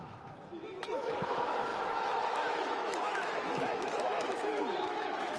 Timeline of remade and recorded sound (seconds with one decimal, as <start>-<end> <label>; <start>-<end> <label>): 0.0-5.4 remade